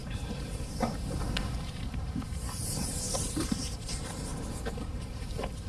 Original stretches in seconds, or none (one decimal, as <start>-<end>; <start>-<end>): 4.3-4.8